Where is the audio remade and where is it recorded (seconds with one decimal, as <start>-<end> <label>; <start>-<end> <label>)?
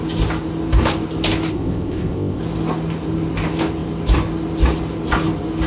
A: 0.0-1.5 recorded; 1.5-2.4 remade; 2.4-5.7 recorded